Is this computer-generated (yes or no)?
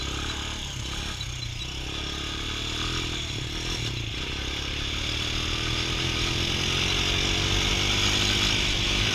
no